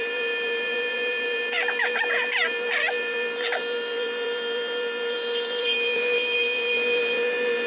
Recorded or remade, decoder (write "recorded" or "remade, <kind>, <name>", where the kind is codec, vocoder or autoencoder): remade, vocoder, BigVGAN v2